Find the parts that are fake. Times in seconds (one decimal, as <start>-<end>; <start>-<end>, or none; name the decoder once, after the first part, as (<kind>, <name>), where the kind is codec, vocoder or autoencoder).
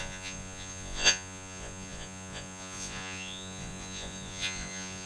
0.0-5.1 (vocoder, Vocos)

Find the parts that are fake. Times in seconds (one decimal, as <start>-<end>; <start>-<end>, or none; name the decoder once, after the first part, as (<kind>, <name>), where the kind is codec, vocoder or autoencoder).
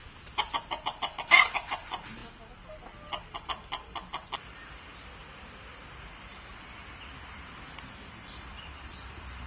0.8-2.2 (vocoder, BigVGAN v2); 3.3-4.9; 6.1-6.5; 8.1-9.5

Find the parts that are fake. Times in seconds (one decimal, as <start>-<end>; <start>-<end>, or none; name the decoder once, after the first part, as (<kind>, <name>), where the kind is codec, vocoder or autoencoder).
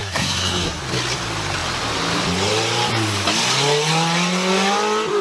0.0-0.8 (codec, SNAC)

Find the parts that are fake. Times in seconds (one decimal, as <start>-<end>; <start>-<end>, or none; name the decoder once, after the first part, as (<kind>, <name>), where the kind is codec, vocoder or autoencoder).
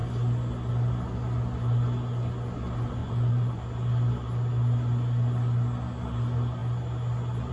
3.0-3.6 (vocoder, Vocos)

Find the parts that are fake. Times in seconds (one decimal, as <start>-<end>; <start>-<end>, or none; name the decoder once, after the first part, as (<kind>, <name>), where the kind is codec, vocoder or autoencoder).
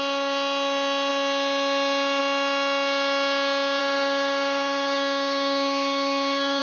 3.8-6.6 (autoencoder, DAC-VAE)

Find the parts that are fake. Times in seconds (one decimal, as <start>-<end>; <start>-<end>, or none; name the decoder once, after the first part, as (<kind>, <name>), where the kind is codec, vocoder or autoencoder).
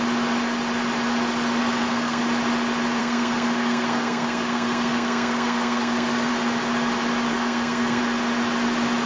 1.6-2.2 (codec, SNAC); 3.0-6.3; 7.3-8.0